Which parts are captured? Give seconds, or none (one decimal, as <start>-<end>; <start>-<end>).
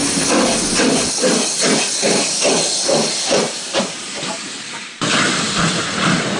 0.0-6.4